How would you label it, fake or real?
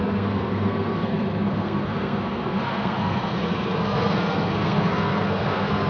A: fake